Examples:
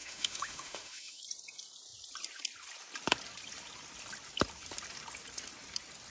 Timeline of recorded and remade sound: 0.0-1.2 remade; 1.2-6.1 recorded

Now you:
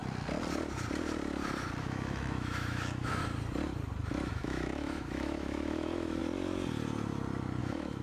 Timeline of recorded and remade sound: 0.0-1.8 recorded; 1.8-3.2 remade; 3.2-4.3 recorded; 4.3-6.2 remade; 6.2-7.6 recorded; 7.6-8.0 remade

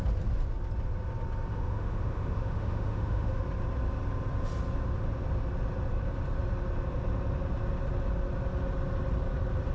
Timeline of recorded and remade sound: 0.0-1.5 recorded; 1.5-3.4 remade; 3.4-9.7 recorded

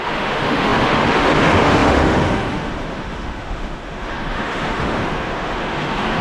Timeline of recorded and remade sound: 0.0-6.2 remade

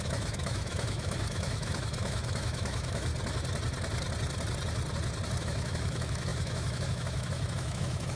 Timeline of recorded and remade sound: 0.0-3.1 remade; 3.1-5.4 recorded; 5.4-8.2 remade